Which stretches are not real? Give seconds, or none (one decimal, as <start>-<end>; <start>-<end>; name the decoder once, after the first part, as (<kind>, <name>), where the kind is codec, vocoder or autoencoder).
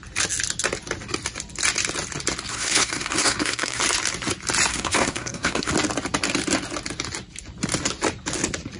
2.5-3.8 (codec, SNAC); 4.7-5.7